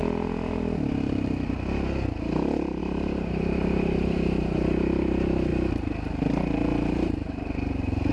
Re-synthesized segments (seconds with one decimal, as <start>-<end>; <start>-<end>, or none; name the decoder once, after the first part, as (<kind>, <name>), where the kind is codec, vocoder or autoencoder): 2.8-5.5 (vocoder, BigVGAN v2); 6.3-8.1